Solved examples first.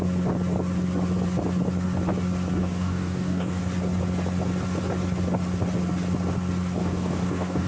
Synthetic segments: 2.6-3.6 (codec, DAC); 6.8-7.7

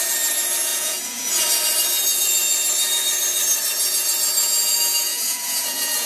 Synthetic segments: 0.7-1.3 (vocoder, Vocos); 4.4-6.1

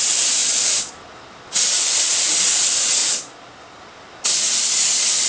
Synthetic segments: none

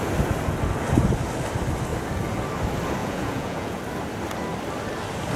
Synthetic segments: 3.0-3.8 (vocoder, Vocos)

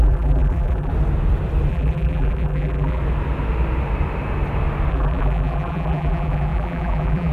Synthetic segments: 0.0-0.9 (vocoder, BigVGAN v2); 1.7-3.0; 4.9-7.3

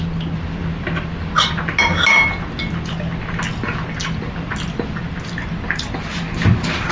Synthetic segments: none

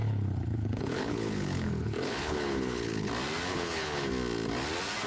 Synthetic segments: 0.0-3.1 (codec, HILCodec); 3.5-4.1